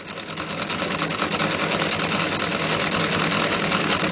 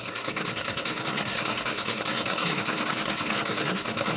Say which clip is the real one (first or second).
first